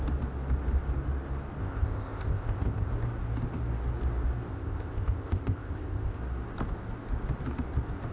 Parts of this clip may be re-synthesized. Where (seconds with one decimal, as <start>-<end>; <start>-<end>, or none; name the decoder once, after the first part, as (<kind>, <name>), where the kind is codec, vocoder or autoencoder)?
1.6-2.9 (codec, ZipCodec); 4.5-6.2